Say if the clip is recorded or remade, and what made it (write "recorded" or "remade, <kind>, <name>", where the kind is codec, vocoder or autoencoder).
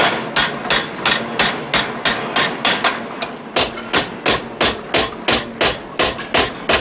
recorded